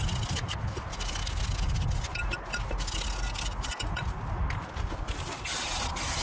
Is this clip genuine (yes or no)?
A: yes